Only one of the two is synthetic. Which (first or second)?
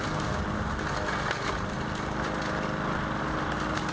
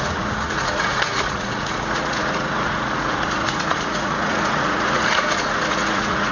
second